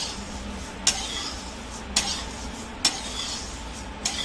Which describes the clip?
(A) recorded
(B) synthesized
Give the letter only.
A